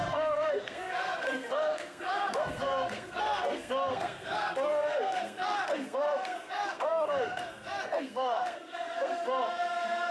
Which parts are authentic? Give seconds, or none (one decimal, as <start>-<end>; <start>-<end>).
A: none